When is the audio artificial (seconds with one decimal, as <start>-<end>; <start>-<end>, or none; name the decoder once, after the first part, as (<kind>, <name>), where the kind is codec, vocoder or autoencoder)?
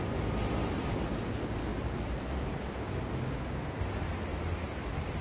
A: none